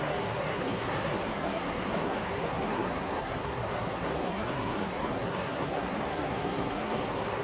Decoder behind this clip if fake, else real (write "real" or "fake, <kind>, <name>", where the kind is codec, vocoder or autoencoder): fake, codec, SNAC